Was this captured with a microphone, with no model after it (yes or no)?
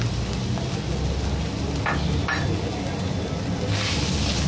yes